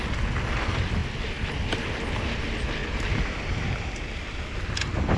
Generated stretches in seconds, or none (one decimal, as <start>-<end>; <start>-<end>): 2.8-4.0